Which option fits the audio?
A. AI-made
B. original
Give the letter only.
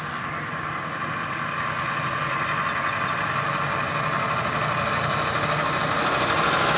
B